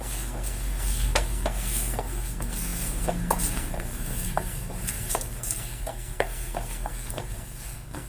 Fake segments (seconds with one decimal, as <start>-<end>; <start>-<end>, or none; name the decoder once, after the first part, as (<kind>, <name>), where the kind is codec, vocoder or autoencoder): 0.0-8.1 (codec, SNAC)